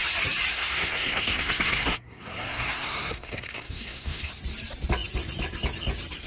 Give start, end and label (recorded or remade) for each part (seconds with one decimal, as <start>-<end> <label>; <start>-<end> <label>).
0.0-0.5 recorded; 0.5-4.3 remade; 4.3-6.3 recorded